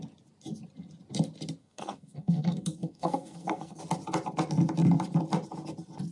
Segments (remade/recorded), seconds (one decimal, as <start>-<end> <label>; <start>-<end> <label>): 0.0-1.6 recorded; 1.6-3.8 remade; 3.8-6.1 recorded